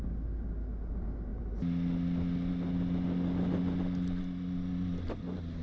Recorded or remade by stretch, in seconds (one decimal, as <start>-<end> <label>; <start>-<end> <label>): 0.0-5.6 recorded